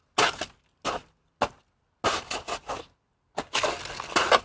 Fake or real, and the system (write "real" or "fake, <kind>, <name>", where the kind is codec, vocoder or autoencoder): real